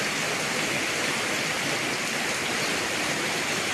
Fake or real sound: real